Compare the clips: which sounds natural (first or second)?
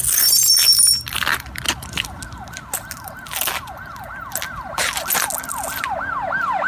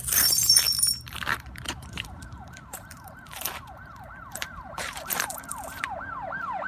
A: first